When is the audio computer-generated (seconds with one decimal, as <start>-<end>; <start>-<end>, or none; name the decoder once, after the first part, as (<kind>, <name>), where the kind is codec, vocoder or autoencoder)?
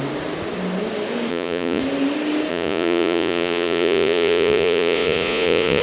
1.3-1.8 (vocoder, Vocos); 2.5-5.8